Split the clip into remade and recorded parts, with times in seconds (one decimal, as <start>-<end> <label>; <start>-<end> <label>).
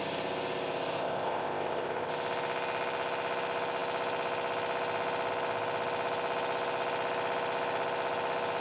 0.0-1.0 recorded; 1.0-2.1 remade; 2.1-8.6 recorded